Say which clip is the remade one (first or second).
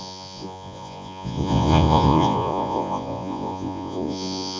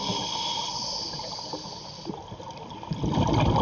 first